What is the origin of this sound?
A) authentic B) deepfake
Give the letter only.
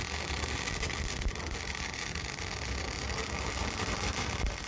A